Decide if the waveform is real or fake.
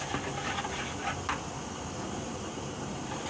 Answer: real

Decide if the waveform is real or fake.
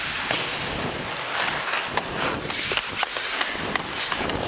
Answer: real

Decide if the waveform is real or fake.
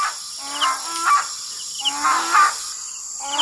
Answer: real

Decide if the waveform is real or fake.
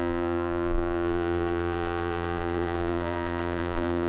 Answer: fake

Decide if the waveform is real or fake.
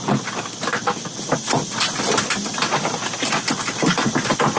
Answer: real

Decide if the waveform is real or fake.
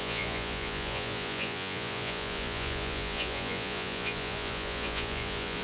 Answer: fake